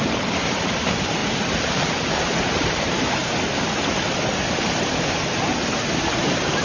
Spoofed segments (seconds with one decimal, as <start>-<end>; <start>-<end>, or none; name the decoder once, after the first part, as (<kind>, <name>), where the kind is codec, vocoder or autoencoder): 0.0-3.2 (vocoder, BigVGAN v2); 5.8-6.6